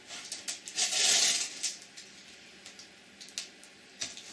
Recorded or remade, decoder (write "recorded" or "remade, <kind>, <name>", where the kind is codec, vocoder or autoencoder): recorded